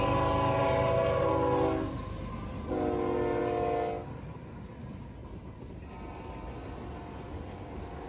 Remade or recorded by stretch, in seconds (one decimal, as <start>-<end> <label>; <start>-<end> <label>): 0.0-0.6 recorded; 0.6-1.3 remade; 1.3-5.2 recorded; 5.2-5.9 remade; 5.9-8.1 recorded